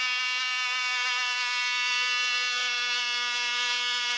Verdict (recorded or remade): recorded